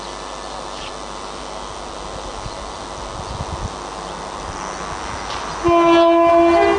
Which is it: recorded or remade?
recorded